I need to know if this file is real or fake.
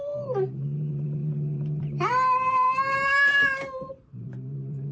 fake